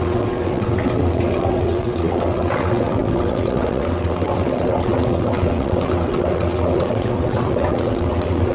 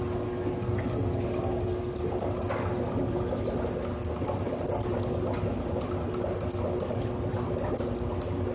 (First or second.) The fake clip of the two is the first